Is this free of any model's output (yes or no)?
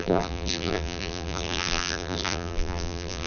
no